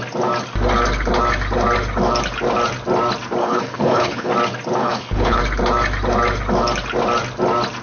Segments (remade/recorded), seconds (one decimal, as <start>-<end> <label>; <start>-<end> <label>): 0.0-3.4 recorded; 3.4-4.3 remade; 4.3-4.8 recorded; 4.8-5.4 remade; 5.4-7.8 recorded